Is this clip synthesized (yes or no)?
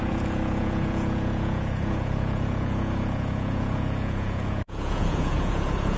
yes